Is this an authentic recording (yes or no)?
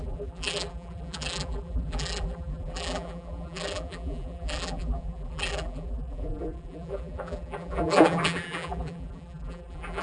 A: no